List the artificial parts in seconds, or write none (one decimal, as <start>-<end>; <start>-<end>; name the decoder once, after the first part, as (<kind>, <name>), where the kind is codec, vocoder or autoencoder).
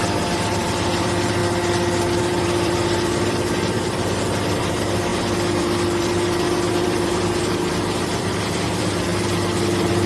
0.0-1.4 (vocoder, BigVGAN v2); 2.2-10.1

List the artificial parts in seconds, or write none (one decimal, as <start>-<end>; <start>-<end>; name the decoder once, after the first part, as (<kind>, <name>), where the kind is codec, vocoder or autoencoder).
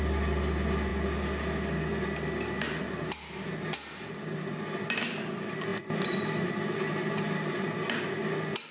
5.7-6.5 (vocoder, BigVGAN v2)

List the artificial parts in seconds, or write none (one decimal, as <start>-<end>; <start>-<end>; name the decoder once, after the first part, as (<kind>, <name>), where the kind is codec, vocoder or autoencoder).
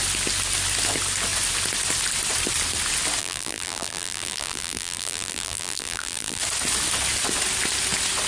3.2-6.4 (vocoder, BigVGAN v2)